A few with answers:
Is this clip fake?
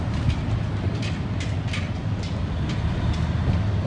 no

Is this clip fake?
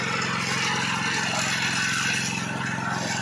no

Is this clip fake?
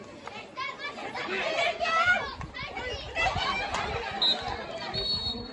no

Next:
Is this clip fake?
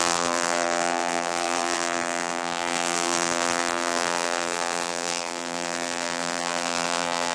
yes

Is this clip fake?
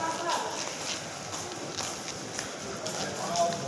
no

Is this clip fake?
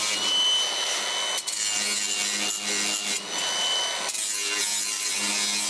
no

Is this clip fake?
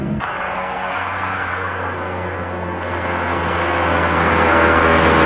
yes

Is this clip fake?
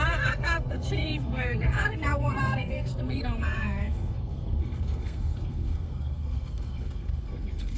yes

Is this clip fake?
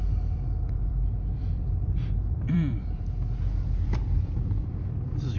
yes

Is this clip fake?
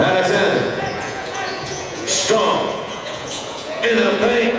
yes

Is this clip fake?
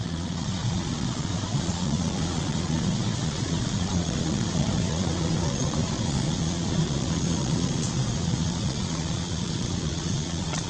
yes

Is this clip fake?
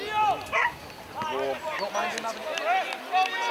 no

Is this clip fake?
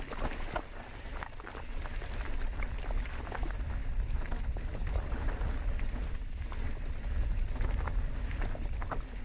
no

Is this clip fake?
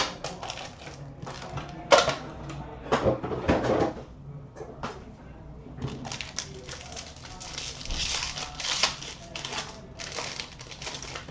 no